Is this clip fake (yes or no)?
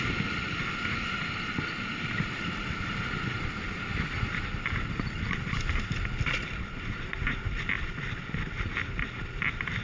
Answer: no